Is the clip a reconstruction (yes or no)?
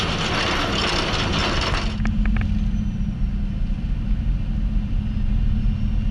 no